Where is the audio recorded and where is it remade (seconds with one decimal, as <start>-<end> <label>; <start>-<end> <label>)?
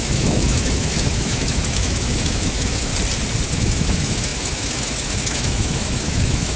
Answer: 0.0-2.9 remade; 2.9-3.5 recorded; 3.5-6.6 remade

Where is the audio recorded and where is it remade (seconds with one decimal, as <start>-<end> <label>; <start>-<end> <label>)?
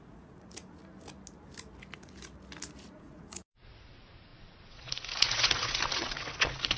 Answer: 0.0-0.8 remade; 0.8-2.9 recorded; 2.9-6.8 remade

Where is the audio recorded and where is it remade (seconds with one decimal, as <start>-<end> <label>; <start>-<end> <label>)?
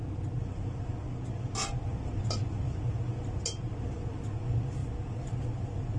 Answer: 0.0-6.0 recorded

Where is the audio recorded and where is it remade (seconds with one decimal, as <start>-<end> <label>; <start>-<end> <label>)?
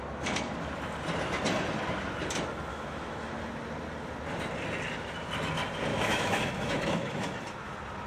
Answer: 0.0-2.7 recorded; 2.7-3.3 remade; 3.3-5.9 recorded; 5.9-7.4 remade; 7.4-8.1 recorded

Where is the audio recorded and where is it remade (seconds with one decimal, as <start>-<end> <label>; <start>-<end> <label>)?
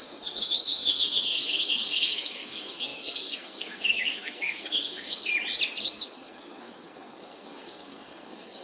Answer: 0.0-5.3 remade; 5.3-5.8 recorded; 5.8-8.6 remade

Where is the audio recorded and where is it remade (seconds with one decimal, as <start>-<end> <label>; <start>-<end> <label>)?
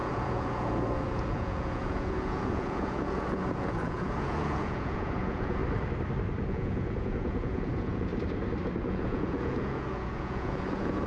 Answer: 0.0-5.6 remade; 5.6-6.5 recorded; 6.5-8.1 remade; 8.1-8.8 recorded; 8.8-11.1 remade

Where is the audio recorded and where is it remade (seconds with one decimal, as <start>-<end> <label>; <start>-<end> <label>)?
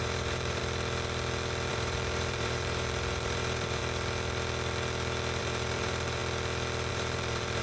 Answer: 0.0-0.6 remade; 0.6-1.7 recorded; 1.7-3.8 remade; 3.8-5.4 recorded; 5.4-6.2 remade; 6.2-6.9 recorded; 6.9-7.6 remade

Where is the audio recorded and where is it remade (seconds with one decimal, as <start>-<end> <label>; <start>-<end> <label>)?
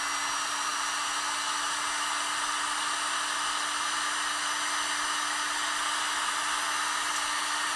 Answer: 0.0-7.8 recorded